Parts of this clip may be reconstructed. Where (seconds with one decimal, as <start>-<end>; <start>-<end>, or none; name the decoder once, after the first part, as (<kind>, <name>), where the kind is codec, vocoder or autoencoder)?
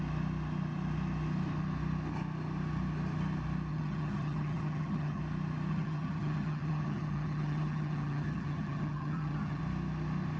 3.7-5.2 (vocoder, HiFi-GAN); 5.7-9.6